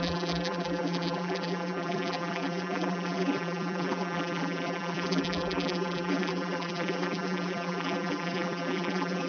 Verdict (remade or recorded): remade